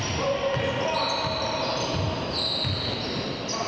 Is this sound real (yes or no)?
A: yes